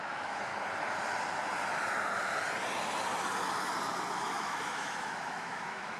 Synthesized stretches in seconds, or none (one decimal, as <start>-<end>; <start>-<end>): 0.0-0.5; 4.1-6.0